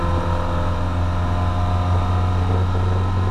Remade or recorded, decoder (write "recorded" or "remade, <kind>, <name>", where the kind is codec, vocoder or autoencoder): recorded